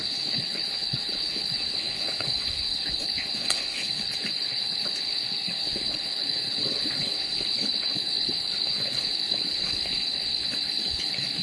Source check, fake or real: fake